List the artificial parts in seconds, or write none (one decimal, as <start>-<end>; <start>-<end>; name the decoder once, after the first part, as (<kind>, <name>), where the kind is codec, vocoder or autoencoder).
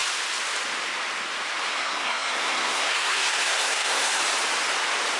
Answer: 1.7-4.2 (codec, SNAC)